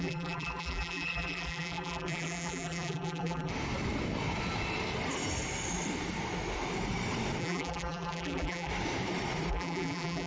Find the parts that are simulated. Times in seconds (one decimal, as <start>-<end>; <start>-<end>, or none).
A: 0.0-3.5; 7.4-8.7; 9.5-10.3